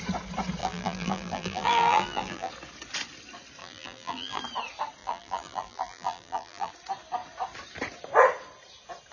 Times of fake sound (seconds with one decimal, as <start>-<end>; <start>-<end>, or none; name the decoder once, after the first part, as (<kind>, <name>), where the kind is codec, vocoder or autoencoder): 0.6-2.5 (vocoder, BigVGAN v2); 3.6-4.4; 5.0-6.7